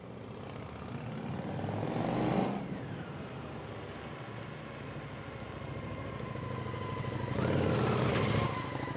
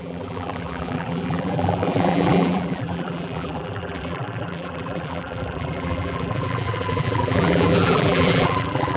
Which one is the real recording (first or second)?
first